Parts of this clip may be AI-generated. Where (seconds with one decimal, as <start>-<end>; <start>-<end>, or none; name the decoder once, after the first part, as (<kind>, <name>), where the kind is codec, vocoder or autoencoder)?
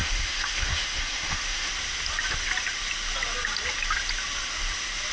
0.0-1.7 (autoencoder, DAC-VAE)